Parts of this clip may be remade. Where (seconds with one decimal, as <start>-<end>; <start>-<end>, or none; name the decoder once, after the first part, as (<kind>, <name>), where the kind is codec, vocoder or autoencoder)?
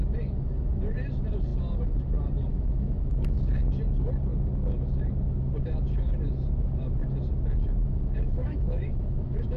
2.5-3.5 (autoencoder, DAC-VAE); 8.4-9.6